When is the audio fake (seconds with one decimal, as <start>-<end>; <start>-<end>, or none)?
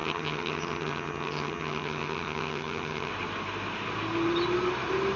0.0-3.1